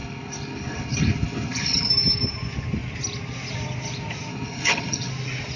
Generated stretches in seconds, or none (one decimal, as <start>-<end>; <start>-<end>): 0.0-1.9; 4.3-5.1